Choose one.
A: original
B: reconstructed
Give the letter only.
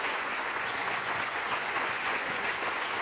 B